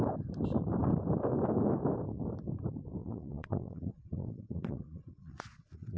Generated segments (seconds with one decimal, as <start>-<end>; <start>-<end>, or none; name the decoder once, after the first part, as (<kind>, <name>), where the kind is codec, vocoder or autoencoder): 3.0-6.0 (vocoder, Vocos)